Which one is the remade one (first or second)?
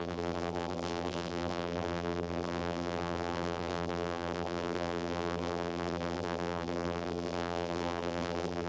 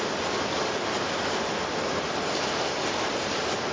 first